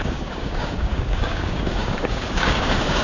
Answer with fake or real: fake